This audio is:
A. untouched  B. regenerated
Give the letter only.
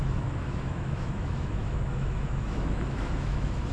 B